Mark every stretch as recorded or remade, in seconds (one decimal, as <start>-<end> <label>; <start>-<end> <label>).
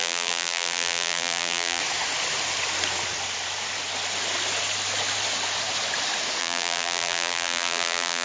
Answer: 0.0-1.8 remade; 1.8-6.4 recorded; 6.4-8.2 remade